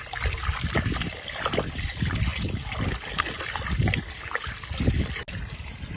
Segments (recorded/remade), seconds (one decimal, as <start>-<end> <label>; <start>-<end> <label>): 0.0-3.8 remade; 3.8-5.6 recorded; 5.6-6.0 remade